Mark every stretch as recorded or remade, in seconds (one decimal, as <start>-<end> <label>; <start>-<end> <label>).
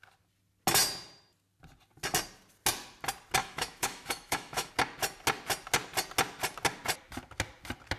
0.0-3.4 recorded; 3.4-4.7 remade; 4.7-8.0 recorded